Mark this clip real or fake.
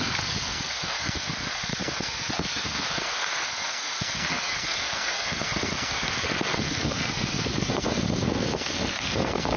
fake